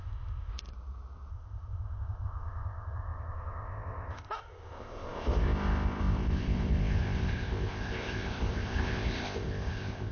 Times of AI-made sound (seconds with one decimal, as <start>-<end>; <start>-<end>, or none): 0.0-0.5; 1.3-10.1